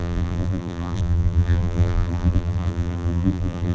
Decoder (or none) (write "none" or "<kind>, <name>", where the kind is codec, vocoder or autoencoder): vocoder, BigVGAN v2